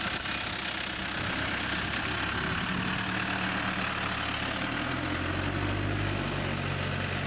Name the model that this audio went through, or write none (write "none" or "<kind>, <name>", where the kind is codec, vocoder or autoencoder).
none